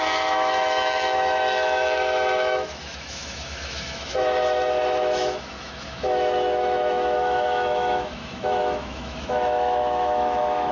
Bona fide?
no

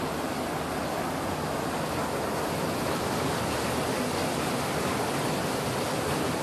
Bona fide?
yes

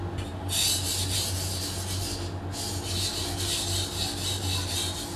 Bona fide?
yes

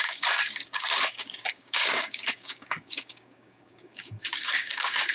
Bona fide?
no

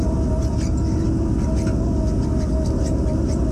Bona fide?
yes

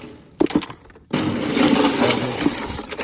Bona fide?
yes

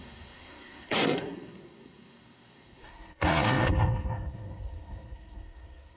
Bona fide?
no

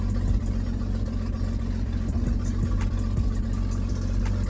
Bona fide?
yes